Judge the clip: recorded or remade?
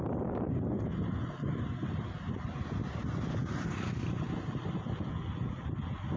recorded